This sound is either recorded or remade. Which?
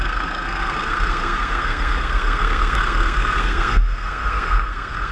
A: remade